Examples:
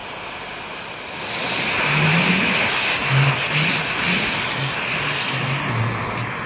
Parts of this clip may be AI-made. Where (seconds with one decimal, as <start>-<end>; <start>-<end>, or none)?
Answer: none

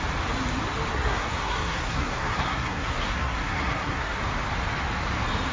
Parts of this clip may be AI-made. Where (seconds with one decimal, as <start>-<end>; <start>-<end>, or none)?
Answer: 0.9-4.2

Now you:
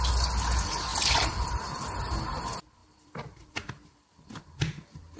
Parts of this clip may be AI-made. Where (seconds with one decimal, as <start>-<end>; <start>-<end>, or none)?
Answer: 0.9-1.5; 2.8-4.4

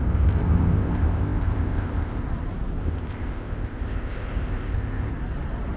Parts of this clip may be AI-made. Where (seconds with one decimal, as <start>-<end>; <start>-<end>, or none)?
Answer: 0.0-2.2; 2.8-5.1

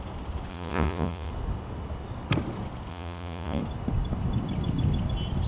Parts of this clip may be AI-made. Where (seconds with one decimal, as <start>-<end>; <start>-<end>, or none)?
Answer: 0.5-1.3; 2.9-3.6

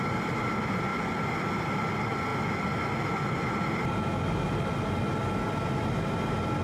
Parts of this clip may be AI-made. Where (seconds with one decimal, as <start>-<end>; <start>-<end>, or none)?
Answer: 0.9-1.5

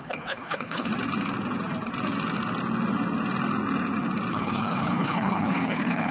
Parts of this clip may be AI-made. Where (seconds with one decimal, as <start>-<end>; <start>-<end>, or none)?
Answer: 0.0-0.9; 4.3-6.1

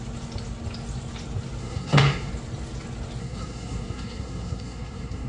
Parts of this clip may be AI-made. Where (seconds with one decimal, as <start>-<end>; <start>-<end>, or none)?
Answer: 1.6-2.3; 3.2-5.3